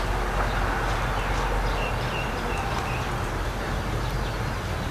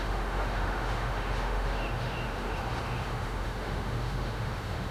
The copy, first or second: second